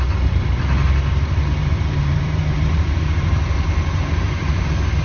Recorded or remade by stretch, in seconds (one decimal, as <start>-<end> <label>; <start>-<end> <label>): 0.0-1.6 recorded; 1.6-4.6 remade; 4.6-5.0 recorded